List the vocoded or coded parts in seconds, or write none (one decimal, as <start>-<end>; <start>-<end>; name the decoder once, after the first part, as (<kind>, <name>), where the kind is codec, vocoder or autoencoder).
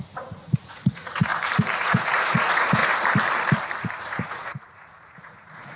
0.0-1.3 (vocoder, Vocos); 1.8-2.8; 3.8-5.8